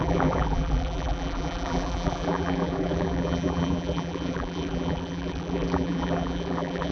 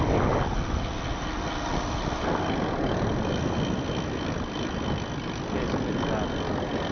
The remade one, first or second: first